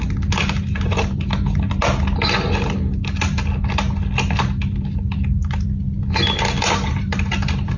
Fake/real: real